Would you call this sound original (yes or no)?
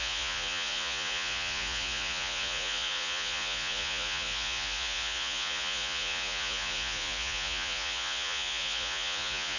no